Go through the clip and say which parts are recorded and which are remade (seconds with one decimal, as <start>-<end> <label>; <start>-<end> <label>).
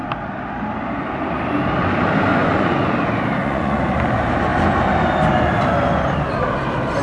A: 0.0-2.3 recorded; 2.3-2.9 remade; 2.9-3.4 recorded; 3.4-3.9 remade; 3.9-7.0 recorded